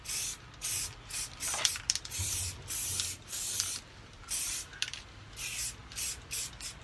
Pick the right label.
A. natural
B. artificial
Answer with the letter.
A